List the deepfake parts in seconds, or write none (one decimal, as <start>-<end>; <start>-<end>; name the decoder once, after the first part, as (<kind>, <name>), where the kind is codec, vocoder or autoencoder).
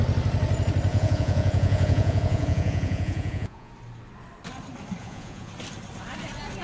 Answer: 0.9-3.7 (vocoder, Vocos); 5.0-5.5